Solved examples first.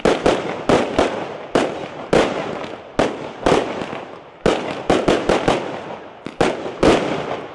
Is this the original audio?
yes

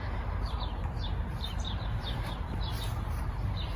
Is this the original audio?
no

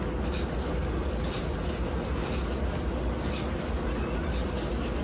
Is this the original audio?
yes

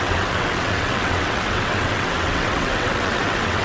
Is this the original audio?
no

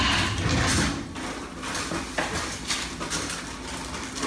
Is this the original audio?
yes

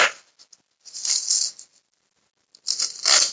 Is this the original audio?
yes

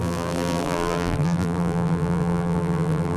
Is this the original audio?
no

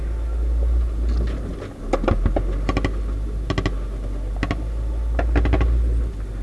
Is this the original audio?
yes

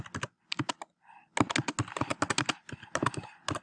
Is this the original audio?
yes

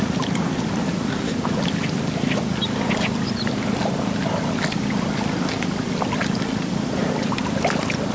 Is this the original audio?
yes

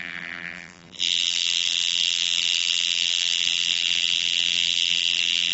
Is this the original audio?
no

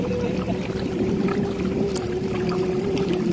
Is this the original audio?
yes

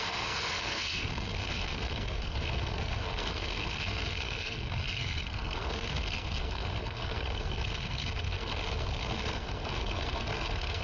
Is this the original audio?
no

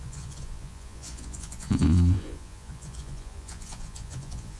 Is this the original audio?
no